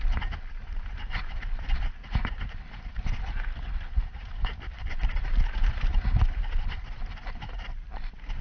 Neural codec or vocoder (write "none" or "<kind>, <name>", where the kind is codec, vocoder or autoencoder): none